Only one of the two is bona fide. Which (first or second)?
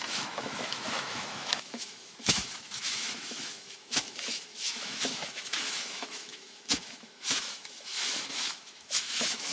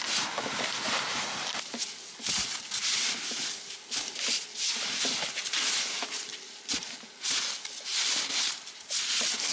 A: second